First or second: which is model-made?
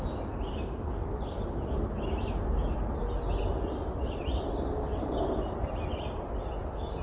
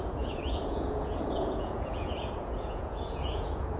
second